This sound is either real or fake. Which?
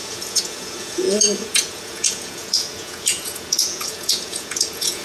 fake